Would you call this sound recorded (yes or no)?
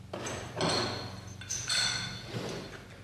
yes